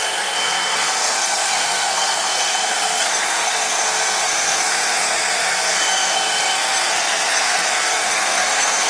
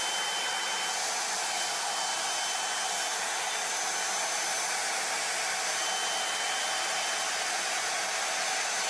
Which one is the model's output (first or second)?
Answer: first